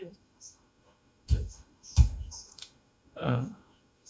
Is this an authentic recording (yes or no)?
no